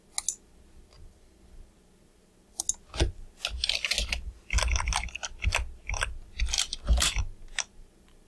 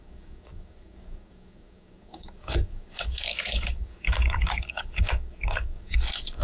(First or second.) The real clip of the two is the first